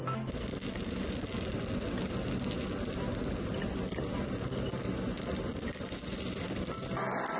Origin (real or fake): real